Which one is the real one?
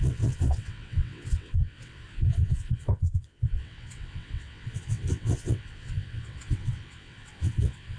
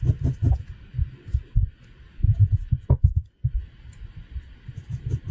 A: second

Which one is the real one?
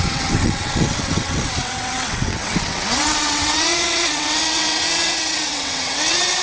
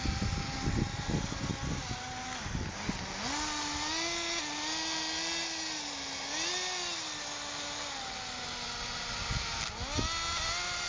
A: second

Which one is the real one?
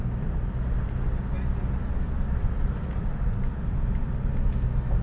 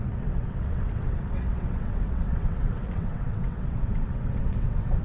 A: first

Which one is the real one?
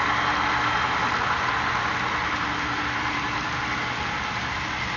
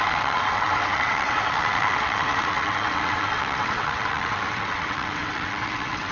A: first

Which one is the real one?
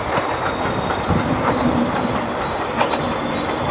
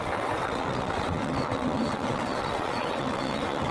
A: first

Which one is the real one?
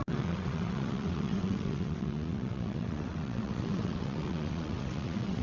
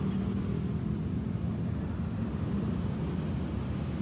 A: second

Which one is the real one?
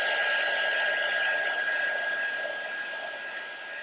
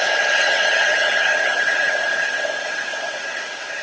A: first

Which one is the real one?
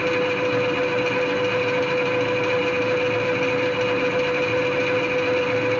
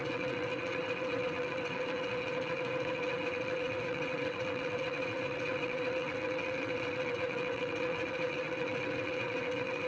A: first